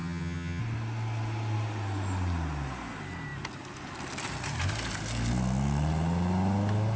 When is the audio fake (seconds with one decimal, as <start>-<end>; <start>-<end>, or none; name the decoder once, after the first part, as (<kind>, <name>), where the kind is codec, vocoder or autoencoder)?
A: 0.0-0.6 (vocoder, HiFi-GAN)